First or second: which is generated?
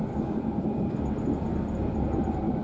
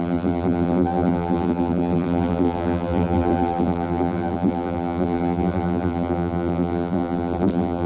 second